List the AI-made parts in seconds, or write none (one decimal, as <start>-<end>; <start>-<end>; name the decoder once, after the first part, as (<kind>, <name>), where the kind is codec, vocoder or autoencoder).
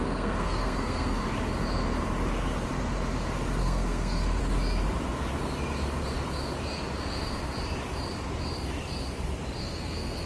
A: 0.0-1.2 (codec, SNAC); 3.6-4.4; 9.6-10.3